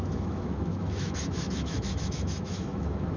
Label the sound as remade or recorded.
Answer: remade